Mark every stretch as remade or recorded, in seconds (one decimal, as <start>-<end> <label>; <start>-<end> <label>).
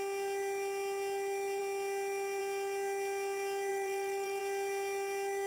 0.0-3.7 recorded; 3.7-4.4 remade; 4.4-5.5 recorded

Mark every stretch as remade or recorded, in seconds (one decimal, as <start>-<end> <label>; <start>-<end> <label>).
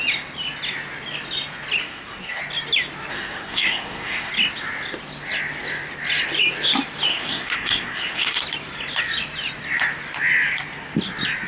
0.0-1.8 recorded; 1.8-2.4 remade; 2.4-3.1 recorded; 3.1-4.3 remade; 4.3-7.1 recorded; 7.1-8.4 remade; 8.4-11.5 recorded